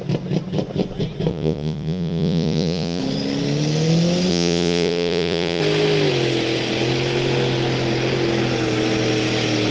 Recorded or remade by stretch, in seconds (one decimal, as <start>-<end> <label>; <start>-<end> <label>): 0.0-1.3 recorded; 1.3-3.0 remade; 3.0-4.3 recorded; 4.3-5.6 remade; 5.6-9.7 recorded